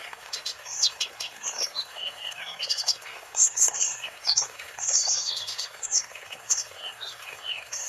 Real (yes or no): no